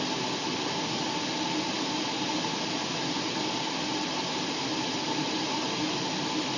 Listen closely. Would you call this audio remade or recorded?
recorded